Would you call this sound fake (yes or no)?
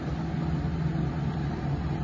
no